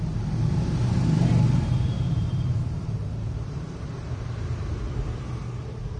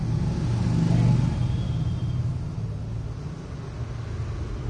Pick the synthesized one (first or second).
first